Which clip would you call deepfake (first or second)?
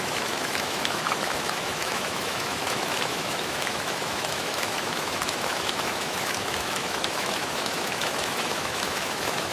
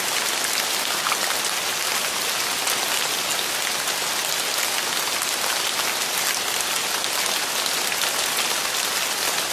first